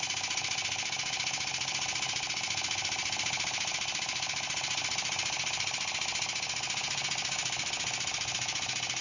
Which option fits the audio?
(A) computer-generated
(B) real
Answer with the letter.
B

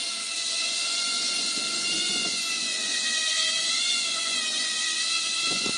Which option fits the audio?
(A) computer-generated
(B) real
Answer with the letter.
A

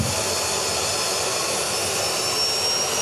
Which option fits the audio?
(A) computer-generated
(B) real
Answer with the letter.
B